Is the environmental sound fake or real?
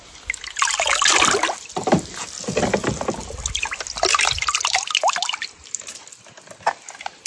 real